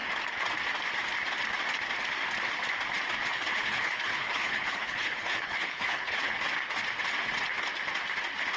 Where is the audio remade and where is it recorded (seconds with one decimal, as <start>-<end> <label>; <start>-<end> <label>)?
0.0-3.3 recorded; 3.3-6.4 remade; 6.4-8.6 recorded